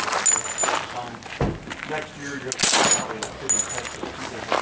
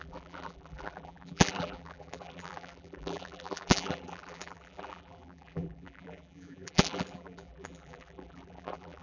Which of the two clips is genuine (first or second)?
first